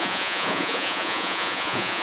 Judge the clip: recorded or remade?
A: remade